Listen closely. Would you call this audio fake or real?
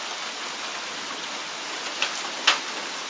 real